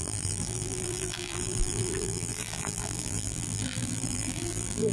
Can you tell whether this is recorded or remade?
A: remade